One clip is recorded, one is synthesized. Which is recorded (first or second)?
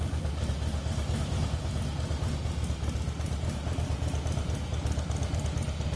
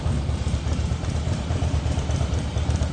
first